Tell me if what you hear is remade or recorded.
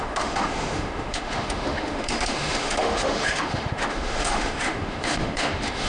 remade